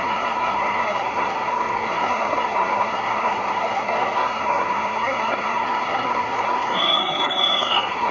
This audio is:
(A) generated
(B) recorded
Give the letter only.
A